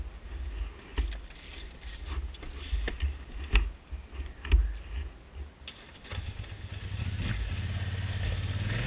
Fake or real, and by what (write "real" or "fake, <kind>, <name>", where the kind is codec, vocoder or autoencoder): real